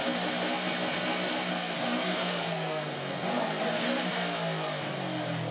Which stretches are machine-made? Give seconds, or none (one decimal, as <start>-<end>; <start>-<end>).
1.5-4.1